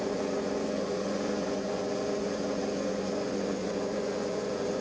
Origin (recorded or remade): remade